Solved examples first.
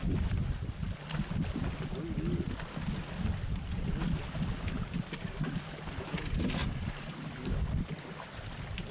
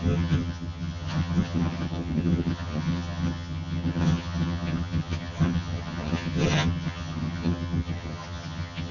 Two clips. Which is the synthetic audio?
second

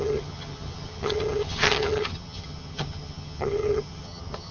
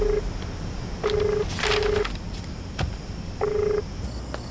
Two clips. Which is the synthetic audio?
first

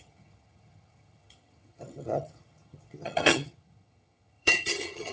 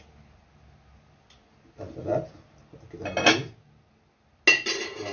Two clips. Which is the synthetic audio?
first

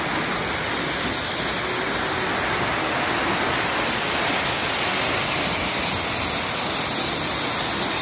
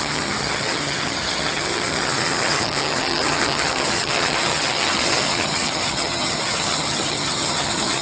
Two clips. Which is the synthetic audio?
second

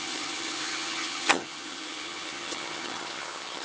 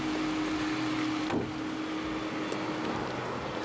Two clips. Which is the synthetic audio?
first